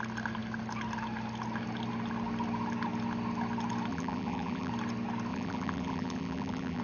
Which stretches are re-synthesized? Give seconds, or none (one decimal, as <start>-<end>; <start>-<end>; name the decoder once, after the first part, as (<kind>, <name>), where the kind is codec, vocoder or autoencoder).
3.9-4.7 (vocoder, BigVGAN v2); 5.3-6.8